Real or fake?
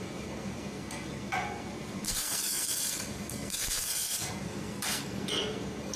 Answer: fake